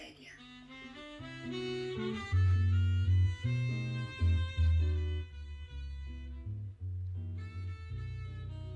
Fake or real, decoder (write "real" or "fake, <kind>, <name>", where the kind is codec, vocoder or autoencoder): real